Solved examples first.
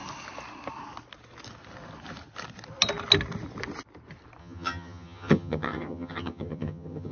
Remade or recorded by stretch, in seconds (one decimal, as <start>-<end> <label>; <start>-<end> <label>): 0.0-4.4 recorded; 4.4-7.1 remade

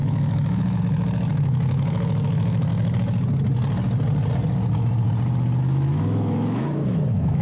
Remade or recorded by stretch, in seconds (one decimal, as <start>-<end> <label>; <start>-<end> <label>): 0.0-2.7 remade; 2.7-5.6 recorded; 5.6-7.4 remade

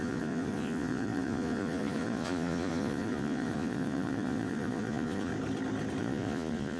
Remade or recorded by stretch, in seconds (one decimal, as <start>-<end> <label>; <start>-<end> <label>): 0.0-5.3 remade; 5.3-6.0 recorded; 6.0-6.8 remade

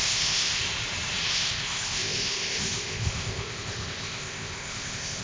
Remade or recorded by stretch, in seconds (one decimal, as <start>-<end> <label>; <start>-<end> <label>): 0.0-0.6 remade; 0.6-1.3 recorded; 1.3-5.2 remade

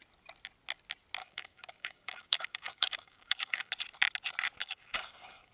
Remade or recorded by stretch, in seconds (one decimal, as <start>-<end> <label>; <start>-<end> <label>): 0.0-1.2 recorded; 1.2-3.7 remade; 3.7-4.6 recorded; 4.6-5.5 remade